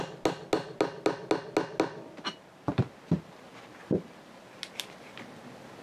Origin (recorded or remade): recorded